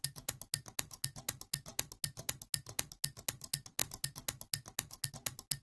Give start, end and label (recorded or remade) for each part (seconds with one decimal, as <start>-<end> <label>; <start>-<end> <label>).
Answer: 0.0-5.6 recorded